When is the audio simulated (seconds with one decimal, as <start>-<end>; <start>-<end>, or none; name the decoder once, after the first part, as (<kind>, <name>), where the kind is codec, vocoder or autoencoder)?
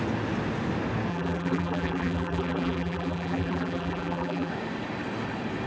1.1-4.5 (vocoder, BigVGAN v2)